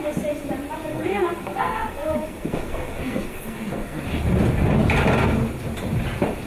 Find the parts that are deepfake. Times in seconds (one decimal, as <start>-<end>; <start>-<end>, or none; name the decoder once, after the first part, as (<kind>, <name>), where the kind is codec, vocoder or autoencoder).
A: 0.9-4.0 (codec, SNAC)